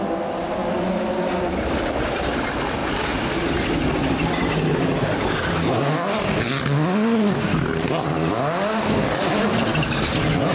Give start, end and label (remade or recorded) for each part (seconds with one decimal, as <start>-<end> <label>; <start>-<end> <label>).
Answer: 0.0-10.5 recorded